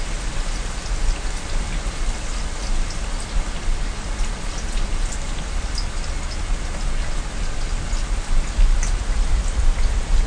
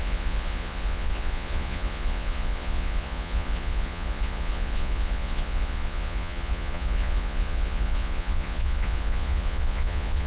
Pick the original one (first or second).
first